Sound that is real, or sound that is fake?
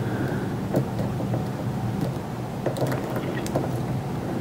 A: fake